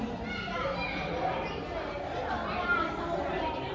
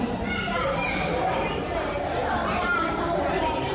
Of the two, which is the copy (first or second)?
second